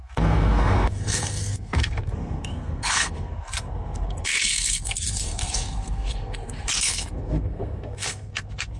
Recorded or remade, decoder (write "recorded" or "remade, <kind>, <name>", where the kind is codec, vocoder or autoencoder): remade, codec, SNAC